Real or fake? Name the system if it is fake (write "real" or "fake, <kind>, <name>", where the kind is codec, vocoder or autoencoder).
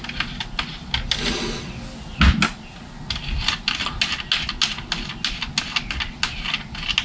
real